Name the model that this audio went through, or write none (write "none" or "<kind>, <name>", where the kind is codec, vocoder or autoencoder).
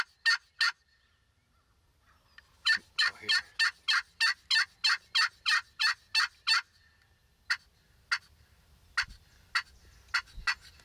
none